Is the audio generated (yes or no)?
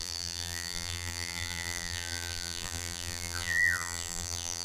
yes